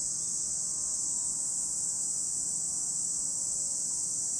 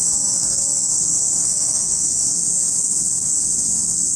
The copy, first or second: second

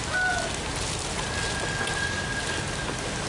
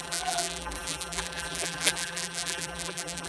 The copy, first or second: second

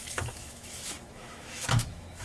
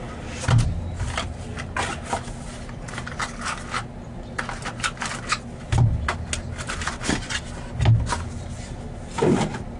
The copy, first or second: first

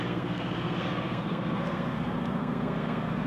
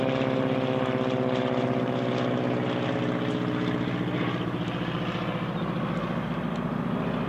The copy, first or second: first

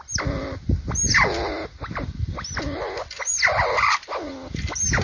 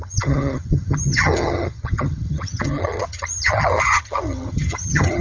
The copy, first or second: second